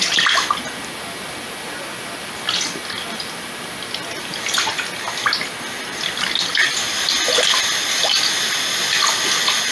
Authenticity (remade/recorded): recorded